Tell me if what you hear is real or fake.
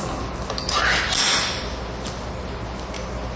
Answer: real